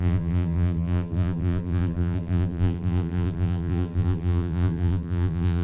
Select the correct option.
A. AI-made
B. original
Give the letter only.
A